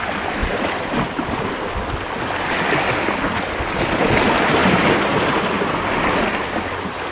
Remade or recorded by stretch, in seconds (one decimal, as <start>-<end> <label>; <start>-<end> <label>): 0.0-0.4 recorded; 0.4-1.5 remade; 1.5-4.6 recorded; 4.6-5.3 remade; 5.3-7.1 recorded